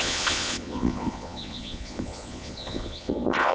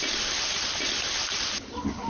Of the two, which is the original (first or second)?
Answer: second